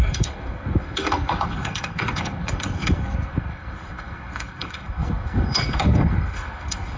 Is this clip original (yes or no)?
no